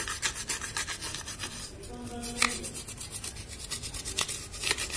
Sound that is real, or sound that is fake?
real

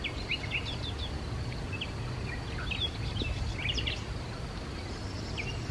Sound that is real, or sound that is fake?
real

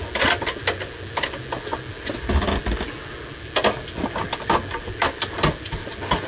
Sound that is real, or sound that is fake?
real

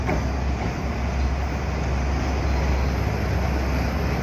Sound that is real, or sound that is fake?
real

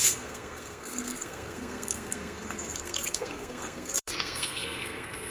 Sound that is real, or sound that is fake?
fake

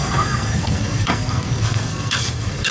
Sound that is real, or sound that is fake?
fake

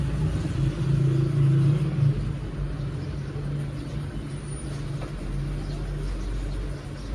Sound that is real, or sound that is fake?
real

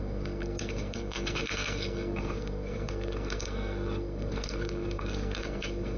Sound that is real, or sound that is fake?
fake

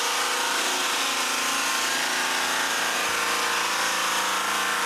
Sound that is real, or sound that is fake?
real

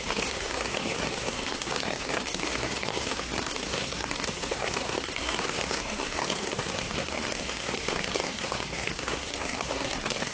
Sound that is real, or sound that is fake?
fake